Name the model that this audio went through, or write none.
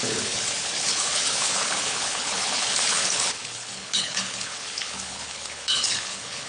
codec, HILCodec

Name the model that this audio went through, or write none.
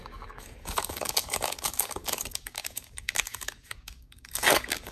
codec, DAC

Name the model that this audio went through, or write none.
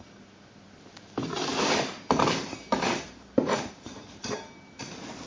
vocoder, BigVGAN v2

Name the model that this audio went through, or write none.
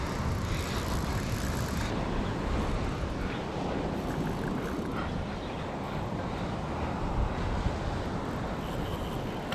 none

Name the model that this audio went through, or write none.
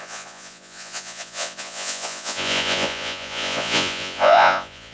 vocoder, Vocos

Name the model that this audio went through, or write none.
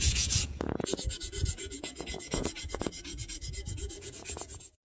vocoder, Vocos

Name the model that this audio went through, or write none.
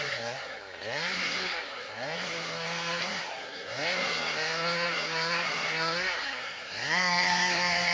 codec, SNAC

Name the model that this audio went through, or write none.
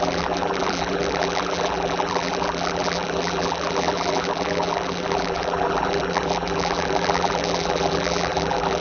vocoder, BigVGAN v2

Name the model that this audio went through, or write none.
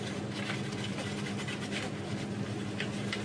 none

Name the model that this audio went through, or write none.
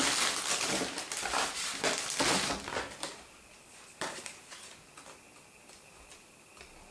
none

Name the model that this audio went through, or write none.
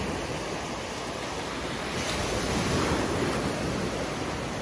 none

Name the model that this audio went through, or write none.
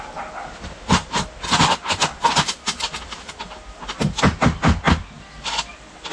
none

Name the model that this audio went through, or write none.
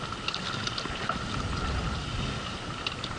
none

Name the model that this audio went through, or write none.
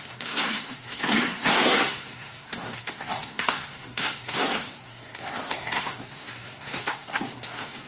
codec, SNAC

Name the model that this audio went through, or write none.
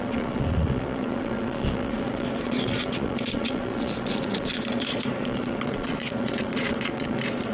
vocoder, Vocos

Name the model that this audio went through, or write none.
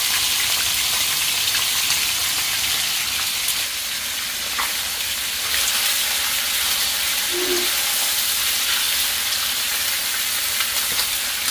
none